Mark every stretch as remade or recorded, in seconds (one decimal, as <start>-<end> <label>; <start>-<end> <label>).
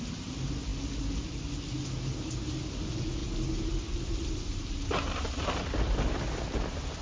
0.0-7.0 recorded